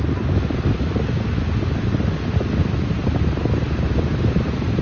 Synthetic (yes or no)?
no